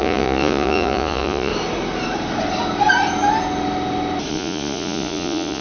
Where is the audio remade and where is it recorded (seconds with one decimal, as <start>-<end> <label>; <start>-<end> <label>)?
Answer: 0.0-1.5 remade; 1.5-4.3 recorded; 4.3-5.6 remade